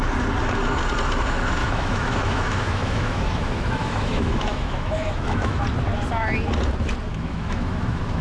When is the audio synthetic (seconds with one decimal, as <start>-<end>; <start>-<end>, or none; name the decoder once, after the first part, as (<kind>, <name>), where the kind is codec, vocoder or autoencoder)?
1.6-5.6 (autoencoder, DAC-VAE); 7.1-8.2

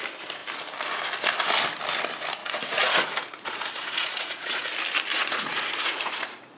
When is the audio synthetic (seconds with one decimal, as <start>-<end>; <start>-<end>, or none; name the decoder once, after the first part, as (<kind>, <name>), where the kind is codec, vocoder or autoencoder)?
2.4-4.6 (vocoder, Vocos); 5.1-6.6

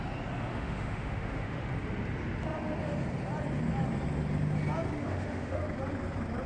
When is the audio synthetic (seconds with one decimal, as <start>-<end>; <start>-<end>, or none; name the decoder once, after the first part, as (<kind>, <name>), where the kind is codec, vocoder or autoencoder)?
0.5-1.7 (autoencoder, DAC-VAE); 5.0-5.6

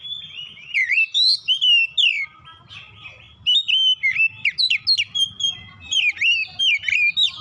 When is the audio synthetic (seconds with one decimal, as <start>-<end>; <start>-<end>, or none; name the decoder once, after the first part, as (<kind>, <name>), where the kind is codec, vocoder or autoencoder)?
none